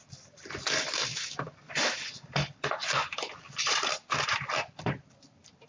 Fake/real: fake